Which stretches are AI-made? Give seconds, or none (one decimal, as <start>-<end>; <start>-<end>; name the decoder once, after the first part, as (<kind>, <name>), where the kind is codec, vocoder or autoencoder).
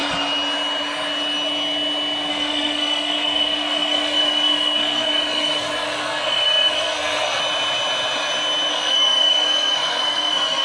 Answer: 2.3-7.4 (codec, SNAC); 8.7-10.6